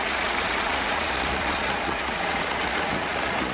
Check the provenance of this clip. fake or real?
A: fake